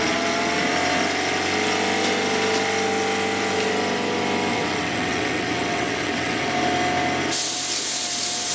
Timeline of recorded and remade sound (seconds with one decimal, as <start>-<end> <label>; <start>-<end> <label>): 0.0-4.5 recorded; 4.5-6.5 remade; 6.5-8.5 recorded